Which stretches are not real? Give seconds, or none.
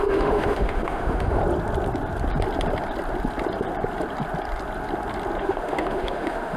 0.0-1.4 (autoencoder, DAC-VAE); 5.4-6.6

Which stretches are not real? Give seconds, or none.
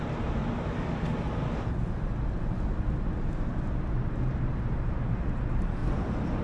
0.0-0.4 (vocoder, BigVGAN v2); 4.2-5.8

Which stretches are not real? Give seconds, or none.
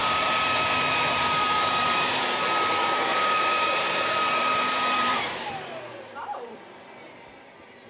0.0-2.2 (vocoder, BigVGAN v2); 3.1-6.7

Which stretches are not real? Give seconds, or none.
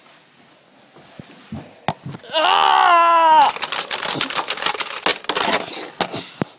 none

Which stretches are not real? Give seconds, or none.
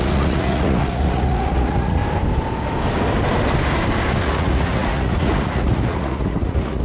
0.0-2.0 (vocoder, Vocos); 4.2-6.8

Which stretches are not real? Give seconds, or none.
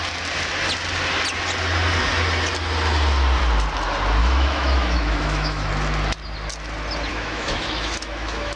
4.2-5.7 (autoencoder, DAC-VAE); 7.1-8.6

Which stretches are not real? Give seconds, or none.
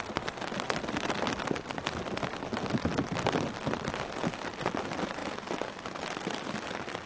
none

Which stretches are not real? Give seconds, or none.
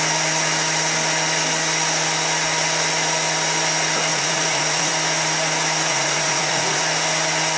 4.1-4.9 (vocoder, Vocos); 5.9-6.8